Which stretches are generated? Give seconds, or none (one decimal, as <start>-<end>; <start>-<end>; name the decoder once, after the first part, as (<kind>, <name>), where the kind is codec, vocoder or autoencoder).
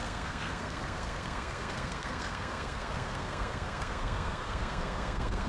0.0-5.5 (codec, SNAC)